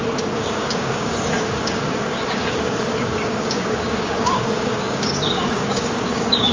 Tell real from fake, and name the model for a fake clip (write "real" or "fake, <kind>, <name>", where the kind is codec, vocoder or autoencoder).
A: fake, codec, DAC